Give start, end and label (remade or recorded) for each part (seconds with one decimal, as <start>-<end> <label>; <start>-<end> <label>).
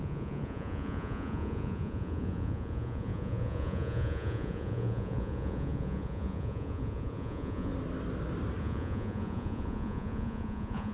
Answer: 0.0-7.7 remade; 7.7-8.6 recorded; 8.6-10.9 remade